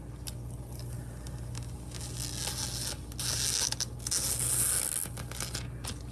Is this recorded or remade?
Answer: recorded